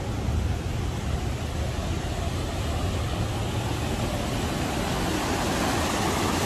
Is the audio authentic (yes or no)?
yes